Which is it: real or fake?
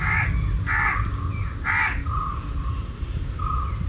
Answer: real